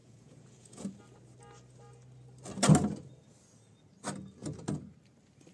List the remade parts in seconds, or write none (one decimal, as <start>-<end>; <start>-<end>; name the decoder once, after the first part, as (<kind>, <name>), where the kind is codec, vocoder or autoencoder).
0.0-1.0 (vocoder, Vocos)